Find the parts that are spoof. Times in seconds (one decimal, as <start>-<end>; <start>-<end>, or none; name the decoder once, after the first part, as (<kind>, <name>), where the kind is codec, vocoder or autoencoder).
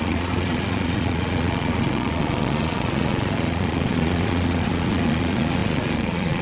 0.0-6.4 (vocoder, Vocos)